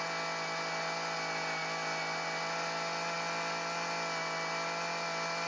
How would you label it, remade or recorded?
recorded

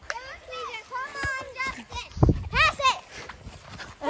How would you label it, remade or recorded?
recorded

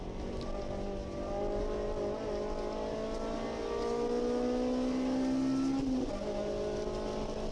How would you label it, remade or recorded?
recorded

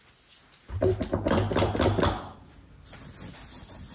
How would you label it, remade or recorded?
recorded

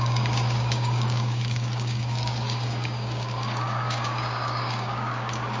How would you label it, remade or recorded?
remade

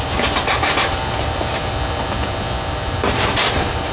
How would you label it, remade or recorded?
recorded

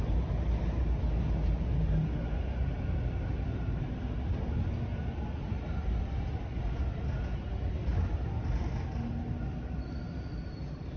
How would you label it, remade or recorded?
recorded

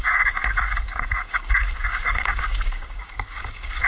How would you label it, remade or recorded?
remade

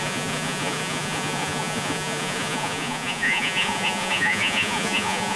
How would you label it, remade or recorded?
remade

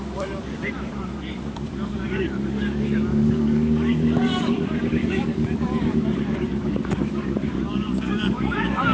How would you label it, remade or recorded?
remade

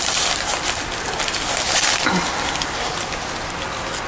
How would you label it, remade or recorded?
recorded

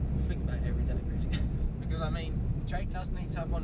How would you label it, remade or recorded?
recorded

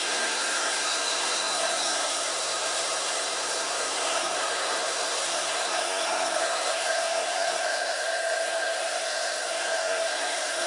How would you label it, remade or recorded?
remade